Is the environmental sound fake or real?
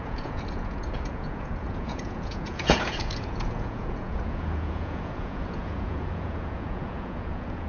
fake